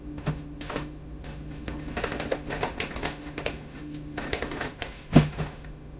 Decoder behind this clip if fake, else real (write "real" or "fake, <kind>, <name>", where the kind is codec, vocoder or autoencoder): fake, autoencoder, DAC-VAE